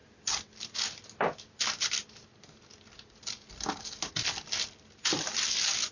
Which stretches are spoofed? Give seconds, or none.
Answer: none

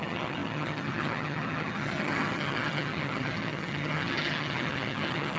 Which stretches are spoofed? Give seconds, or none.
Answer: 0.0-5.4 (vocoder, HiFi-GAN)

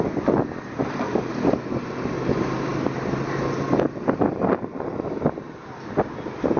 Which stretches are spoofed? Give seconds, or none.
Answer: none

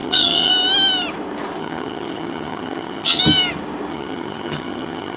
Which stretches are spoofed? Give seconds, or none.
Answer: 0.0-0.5 (vocoder, HiFi-GAN); 1.6-3.2; 3.9-5.2

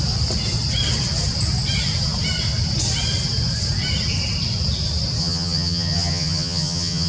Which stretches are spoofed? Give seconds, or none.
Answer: 5.2-7.1 (vocoder, HiFi-GAN)

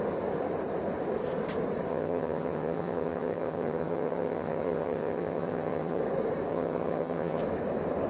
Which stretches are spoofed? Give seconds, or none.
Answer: 1.9-6.0 (vocoder, HiFi-GAN); 6.5-7.4